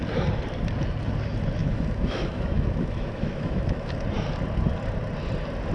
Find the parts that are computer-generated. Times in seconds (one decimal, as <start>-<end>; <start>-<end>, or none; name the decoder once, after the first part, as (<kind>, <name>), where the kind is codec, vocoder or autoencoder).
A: 1.6-3.9 (autoencoder, DAC-VAE)